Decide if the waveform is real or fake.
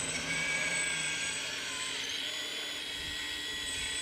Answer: fake